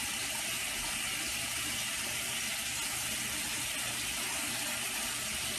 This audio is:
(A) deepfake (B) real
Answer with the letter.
B